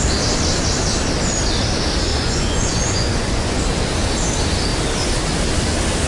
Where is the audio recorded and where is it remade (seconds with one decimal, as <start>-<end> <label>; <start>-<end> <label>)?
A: 0.0-2.1 recorded; 2.1-3.6 remade; 3.6-6.1 recorded